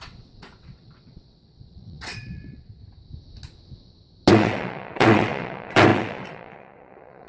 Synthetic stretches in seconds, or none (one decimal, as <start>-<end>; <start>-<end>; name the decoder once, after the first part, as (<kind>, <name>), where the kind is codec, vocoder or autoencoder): 0.0-2.8 (vocoder, WaveNeXt); 4.3-7.3